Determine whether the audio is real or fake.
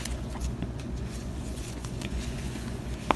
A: fake